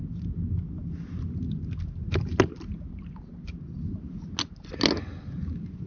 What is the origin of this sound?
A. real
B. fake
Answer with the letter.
A